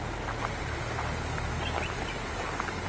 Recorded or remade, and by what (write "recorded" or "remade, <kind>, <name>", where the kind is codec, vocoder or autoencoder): recorded